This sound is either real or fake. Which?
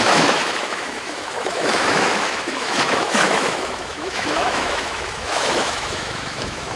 fake